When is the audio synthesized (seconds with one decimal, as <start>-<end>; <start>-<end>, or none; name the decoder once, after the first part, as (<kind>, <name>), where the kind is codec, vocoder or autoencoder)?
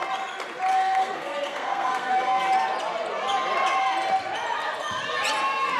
0.7-2.4 (codec, SNAC)